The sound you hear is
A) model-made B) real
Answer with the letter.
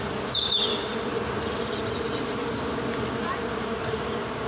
B